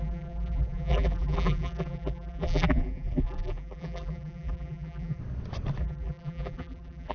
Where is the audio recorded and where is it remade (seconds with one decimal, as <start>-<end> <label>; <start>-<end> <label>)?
0.0-5.2 remade; 5.2-5.8 recorded; 5.8-7.1 remade